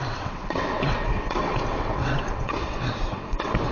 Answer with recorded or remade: remade